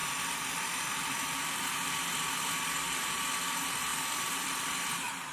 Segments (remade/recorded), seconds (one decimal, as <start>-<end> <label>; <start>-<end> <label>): 0.0-5.3 recorded